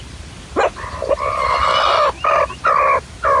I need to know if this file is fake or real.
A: real